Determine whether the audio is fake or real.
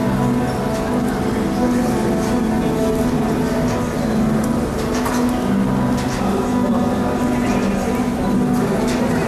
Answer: real